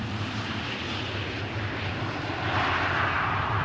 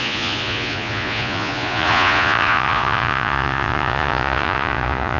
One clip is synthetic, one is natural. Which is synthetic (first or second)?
second